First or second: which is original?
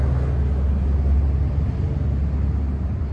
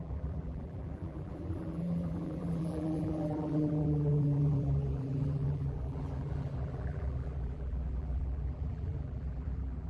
first